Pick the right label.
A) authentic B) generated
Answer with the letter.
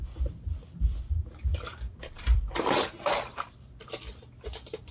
B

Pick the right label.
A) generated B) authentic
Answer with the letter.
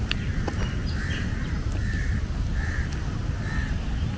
B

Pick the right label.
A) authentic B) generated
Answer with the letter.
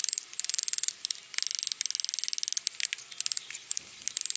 A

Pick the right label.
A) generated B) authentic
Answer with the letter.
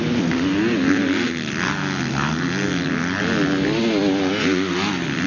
B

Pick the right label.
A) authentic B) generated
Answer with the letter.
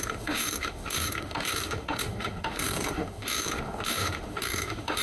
B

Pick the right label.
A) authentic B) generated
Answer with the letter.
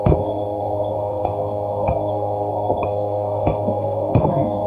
B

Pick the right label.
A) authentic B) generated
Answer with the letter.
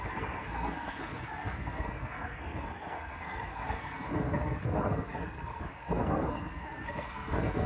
B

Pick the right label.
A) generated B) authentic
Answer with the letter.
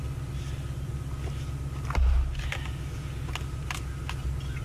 B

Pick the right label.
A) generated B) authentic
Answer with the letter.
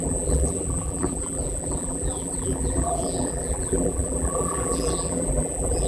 A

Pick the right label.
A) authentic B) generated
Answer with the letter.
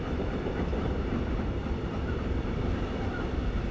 B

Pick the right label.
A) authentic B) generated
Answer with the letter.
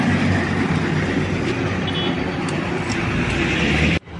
A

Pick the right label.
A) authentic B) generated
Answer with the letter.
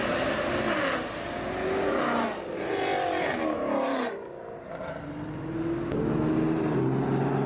A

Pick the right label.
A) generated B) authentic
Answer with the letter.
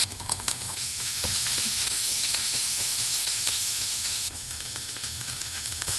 A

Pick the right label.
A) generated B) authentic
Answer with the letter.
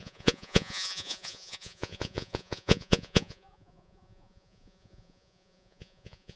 A